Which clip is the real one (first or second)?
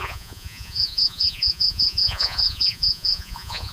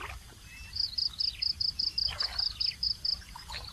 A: second